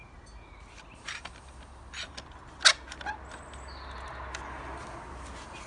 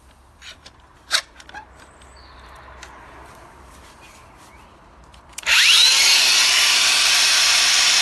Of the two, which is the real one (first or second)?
first